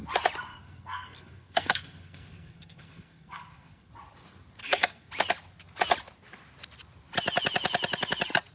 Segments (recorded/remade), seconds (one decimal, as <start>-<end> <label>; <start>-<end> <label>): 0.0-0.5 recorded; 0.5-3.9 remade; 3.9-4.6 recorded; 4.6-5.1 remade; 5.1-8.5 recorded